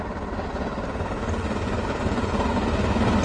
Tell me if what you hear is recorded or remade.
recorded